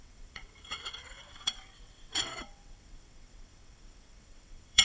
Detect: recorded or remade remade